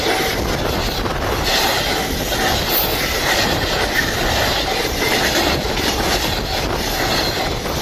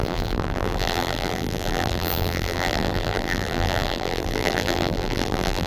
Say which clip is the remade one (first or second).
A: second